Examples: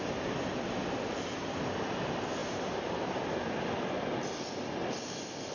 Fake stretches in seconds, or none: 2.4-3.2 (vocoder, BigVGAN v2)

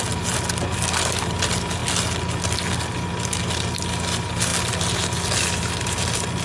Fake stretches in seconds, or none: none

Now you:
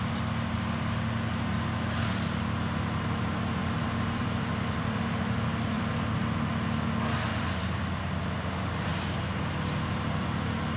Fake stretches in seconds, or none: 3.6-5.8 (vocoder, BigVGAN v2); 7.3-8.2; 8.9-9.4

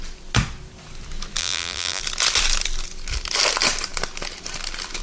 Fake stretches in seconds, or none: 1.4-2.0 (vocoder, BigVGAN v2)

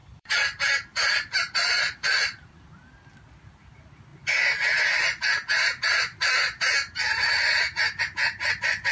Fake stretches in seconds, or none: 0.0-2.5 (vocoder, BigVGAN v2)

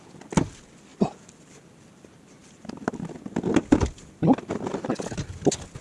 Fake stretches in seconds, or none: none

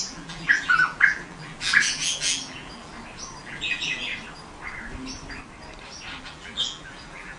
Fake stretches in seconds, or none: 0.0-2.9 (vocoder, BigVGAN v2); 3.4-4.1; 6.2-7.4